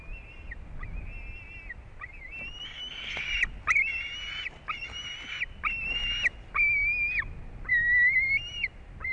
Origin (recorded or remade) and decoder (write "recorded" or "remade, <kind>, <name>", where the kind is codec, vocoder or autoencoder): recorded